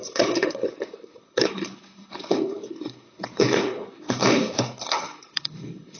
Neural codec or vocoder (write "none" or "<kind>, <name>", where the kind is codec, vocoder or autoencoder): codec, HILCodec